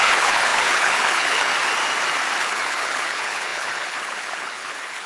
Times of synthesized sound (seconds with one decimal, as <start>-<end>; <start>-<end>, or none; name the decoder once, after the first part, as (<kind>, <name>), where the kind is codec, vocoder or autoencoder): 0.0-1.5 (codec, HILCodec); 2.4-5.1